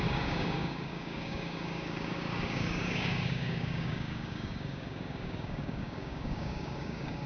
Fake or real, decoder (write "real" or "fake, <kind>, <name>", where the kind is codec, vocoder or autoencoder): fake, codec, DAC